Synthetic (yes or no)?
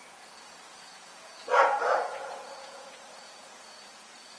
yes